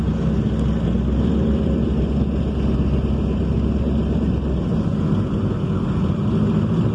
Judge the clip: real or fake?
real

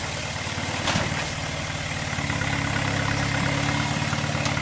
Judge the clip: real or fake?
real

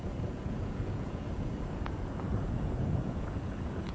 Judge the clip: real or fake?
fake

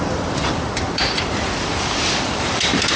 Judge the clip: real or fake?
fake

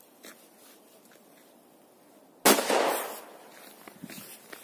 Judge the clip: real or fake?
real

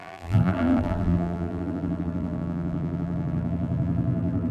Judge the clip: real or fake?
fake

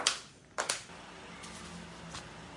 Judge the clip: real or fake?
real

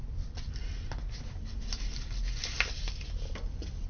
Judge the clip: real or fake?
real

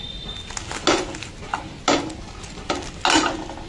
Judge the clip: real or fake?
real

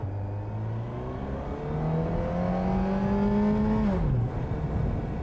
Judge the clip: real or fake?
real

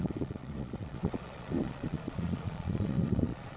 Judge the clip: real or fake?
fake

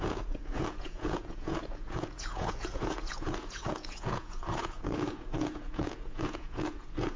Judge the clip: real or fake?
fake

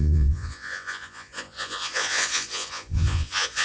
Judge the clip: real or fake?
fake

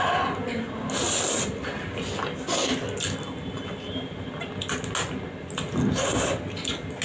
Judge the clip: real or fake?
real